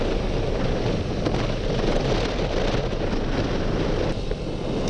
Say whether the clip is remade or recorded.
recorded